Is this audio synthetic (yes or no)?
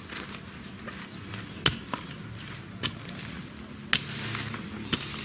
no